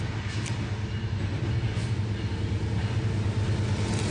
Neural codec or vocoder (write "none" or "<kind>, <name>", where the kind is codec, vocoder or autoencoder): none